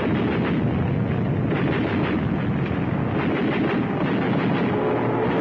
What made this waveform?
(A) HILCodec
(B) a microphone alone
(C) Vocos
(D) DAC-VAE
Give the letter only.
B